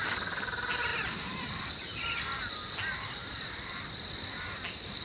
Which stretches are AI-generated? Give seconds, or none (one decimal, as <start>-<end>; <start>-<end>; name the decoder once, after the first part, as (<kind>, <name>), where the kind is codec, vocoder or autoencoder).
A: 0.9-1.4 (vocoder, BigVGAN v2); 3.2-3.9